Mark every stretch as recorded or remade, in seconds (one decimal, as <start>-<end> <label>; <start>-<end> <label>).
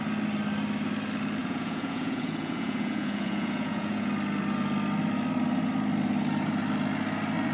0.0-1.4 recorded; 1.4-4.1 remade; 4.1-7.5 recorded